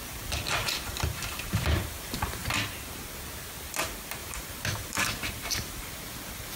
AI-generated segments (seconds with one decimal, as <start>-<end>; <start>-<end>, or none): 0.6-2.5; 4.2-5.9

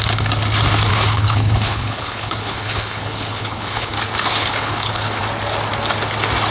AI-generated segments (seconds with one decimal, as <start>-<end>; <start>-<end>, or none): 0.9-3.9; 4.3-5.2

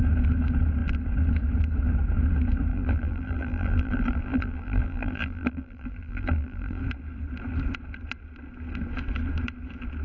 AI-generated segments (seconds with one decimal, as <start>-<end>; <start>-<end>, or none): 2.7-6.8

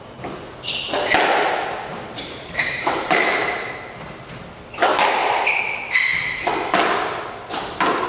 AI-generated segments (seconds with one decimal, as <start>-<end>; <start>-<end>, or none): 1.9-3.7; 4.9-5.6

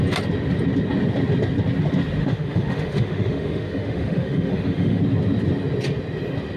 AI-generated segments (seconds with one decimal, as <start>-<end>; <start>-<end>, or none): 2.2-5.0

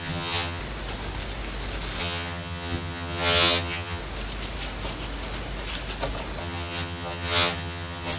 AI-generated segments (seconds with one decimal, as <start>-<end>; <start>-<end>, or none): 0.0-0.6; 2.0-4.0; 6.4-8.2

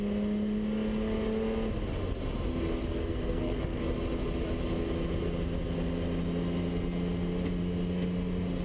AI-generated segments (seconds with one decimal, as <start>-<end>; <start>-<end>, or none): 2.8-3.8

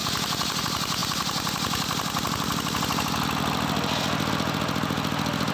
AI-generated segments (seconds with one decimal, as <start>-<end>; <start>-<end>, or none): none